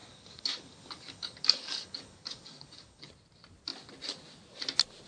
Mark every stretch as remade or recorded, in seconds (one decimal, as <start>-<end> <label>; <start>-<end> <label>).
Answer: 0.0-3.1 remade; 3.1-5.1 recorded